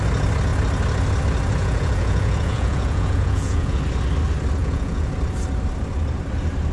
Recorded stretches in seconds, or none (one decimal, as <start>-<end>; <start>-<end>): 0.0-1.6; 3.8-4.6; 5.1-6.7